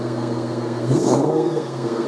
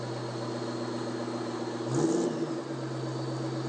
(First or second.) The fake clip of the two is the first